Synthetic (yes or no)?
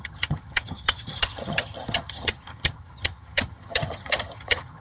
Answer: yes